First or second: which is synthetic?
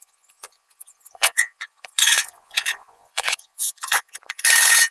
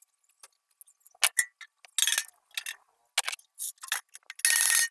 first